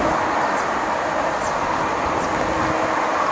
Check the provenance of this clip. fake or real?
real